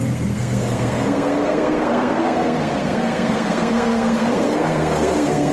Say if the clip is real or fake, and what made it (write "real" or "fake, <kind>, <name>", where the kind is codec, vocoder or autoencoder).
fake, codec, SNAC